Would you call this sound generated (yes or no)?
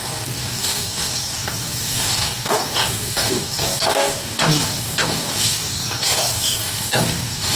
yes